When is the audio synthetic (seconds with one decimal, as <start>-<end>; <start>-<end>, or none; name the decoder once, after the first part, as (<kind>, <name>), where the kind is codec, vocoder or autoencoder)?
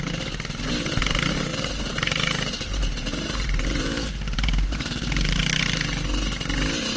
1.5-5.4 (vocoder, BigVGAN v2)